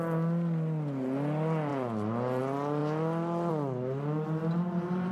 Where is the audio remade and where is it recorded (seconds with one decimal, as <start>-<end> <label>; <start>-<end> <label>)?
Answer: 0.0-5.1 recorded